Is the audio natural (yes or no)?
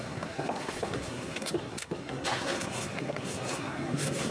no